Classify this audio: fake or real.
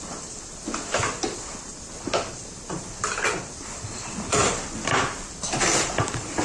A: real